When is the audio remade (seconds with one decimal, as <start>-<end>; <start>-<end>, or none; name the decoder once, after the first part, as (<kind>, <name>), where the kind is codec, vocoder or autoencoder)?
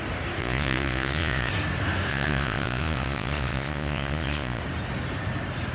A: 0.4-1.5 (vocoder, Vocos); 2.1-4.6